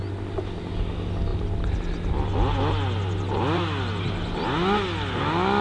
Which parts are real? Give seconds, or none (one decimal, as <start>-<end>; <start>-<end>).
0.0-5.6